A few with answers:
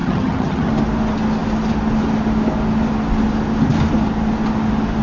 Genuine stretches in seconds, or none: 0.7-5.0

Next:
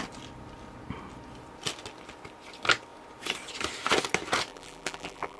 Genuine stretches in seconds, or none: 0.0-4.5

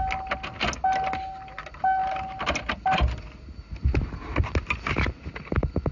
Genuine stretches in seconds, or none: 0.0-5.9

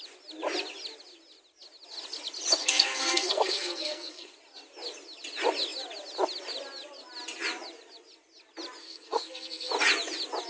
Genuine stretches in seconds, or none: 0.0-2.6; 4.3-8.8; 9.7-10.5

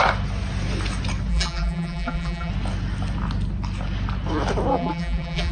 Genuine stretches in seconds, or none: 0.0-1.3; 2.5-4.7